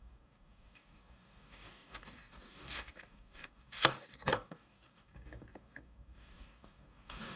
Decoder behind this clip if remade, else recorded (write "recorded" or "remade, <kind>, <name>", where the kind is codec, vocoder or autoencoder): remade, codec, DAC